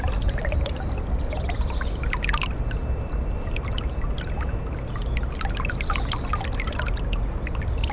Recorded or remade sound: recorded